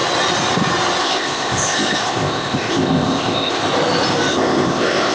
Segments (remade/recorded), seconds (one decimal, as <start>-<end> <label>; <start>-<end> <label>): 0.0-1.0 recorded; 1.0-3.6 remade; 3.6-4.3 recorded; 4.3-5.1 remade